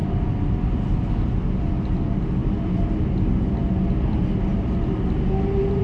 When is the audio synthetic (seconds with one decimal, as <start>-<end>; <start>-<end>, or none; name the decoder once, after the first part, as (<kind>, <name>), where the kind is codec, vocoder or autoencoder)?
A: 0.0-0.5 (vocoder, BigVGAN v2); 2.4-2.9